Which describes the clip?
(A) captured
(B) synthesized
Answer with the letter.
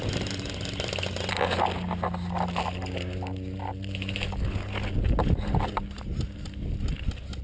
A